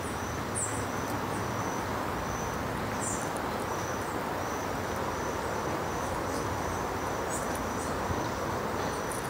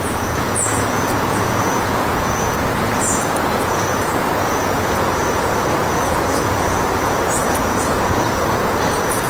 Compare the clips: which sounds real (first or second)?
first